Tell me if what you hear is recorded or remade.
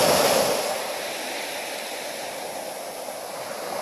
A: recorded